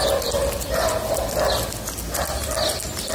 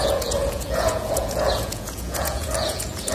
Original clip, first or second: first